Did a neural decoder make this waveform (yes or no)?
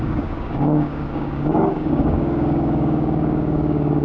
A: yes